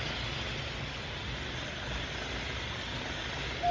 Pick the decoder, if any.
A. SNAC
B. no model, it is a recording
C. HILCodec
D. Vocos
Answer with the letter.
B